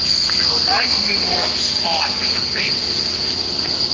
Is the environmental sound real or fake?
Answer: fake